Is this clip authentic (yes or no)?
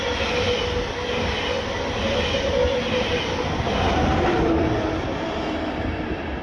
yes